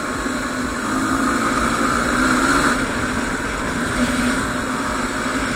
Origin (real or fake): real